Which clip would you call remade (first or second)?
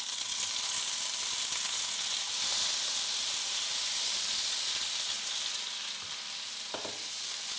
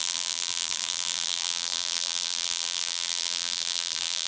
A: second